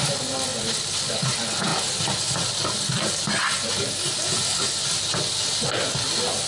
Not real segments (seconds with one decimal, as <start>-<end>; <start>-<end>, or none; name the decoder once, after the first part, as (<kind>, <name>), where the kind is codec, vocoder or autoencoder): none